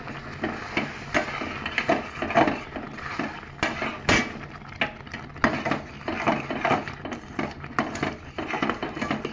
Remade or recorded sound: recorded